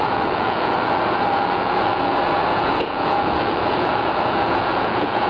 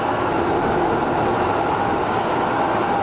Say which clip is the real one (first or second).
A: second